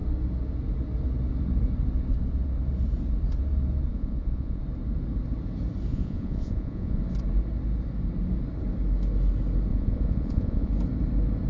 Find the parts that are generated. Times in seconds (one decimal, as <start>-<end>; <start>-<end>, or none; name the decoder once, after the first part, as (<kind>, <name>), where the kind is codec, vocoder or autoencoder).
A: 3.9-4.6 (vocoder, Vocos); 5.9-7.0; 9.7-10.7